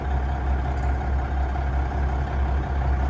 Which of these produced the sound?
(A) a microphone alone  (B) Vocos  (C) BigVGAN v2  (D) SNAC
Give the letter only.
A